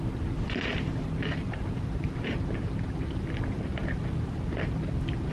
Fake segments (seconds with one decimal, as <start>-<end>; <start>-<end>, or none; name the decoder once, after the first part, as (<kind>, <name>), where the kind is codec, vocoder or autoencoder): 0.7-3.2 (vocoder, BigVGAN v2); 3.8-5.3